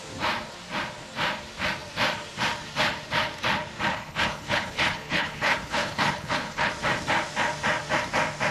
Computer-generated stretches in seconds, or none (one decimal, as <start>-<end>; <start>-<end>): 3.9-6.7